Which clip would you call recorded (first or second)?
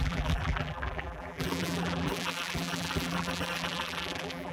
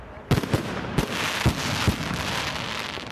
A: second